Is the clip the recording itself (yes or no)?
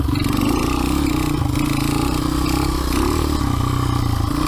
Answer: yes